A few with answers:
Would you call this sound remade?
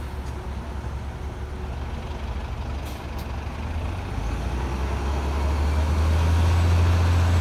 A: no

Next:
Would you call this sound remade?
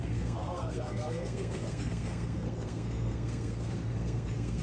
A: yes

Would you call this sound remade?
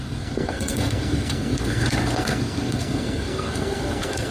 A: yes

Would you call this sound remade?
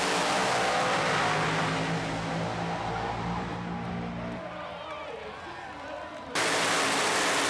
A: no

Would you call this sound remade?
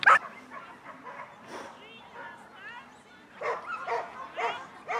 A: no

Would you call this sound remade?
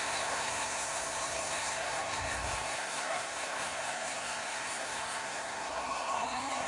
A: yes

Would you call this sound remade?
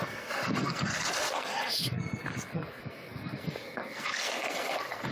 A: yes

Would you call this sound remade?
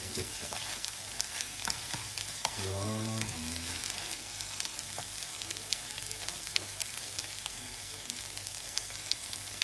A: yes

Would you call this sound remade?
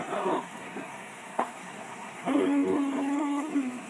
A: yes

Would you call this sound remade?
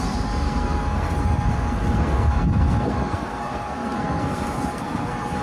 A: yes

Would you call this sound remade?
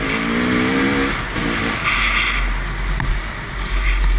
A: no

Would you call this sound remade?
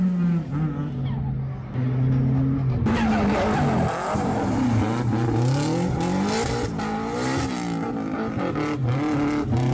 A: no